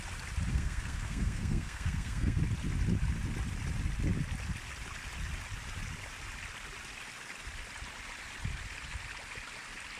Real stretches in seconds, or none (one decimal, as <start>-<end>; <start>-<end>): 0.0-0.5; 2.4-10.0